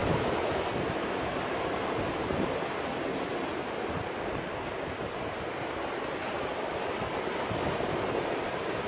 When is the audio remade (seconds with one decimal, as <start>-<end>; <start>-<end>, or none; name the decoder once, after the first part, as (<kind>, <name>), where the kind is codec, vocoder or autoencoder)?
none